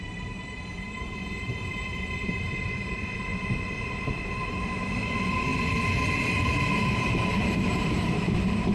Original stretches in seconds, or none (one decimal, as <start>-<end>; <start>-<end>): 3.3-3.9; 5.5-6.2